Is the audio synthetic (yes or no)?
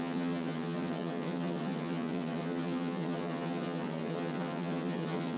yes